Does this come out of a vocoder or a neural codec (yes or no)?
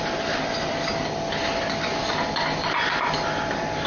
no